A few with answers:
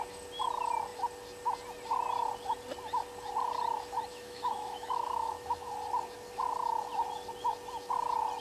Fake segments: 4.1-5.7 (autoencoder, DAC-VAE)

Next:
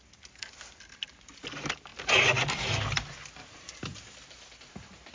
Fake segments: none

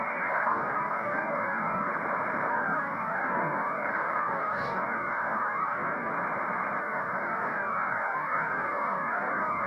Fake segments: 0.0-1.9 (codec, DAC); 2.5-6.1; 6.8-9.7